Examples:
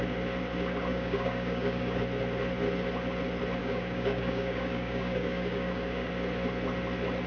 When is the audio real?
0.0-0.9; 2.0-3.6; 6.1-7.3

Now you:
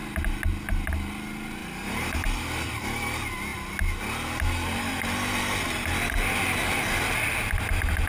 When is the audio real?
0.0-1.6; 2.8-8.1

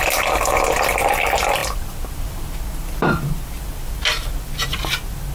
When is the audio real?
none

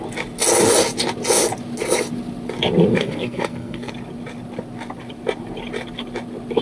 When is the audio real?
0.0-2.9; 3.9-6.6

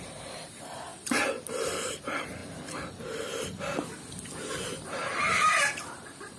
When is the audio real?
0.9-1.9; 2.4-5.5